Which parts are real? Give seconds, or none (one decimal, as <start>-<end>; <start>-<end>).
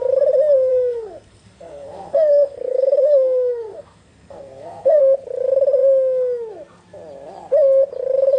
0.0-0.7; 5.0-8.4